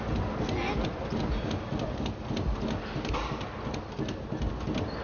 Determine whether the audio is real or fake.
real